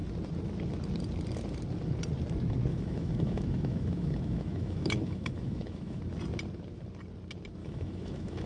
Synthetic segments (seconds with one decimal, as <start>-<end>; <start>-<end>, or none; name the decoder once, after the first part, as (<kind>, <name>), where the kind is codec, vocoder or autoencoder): 2.7-6.0 (autoencoder, DAC-VAE); 7.6-8.5